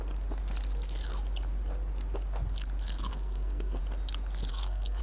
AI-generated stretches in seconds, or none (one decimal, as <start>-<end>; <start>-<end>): 3.1-3.8; 4.5-5.0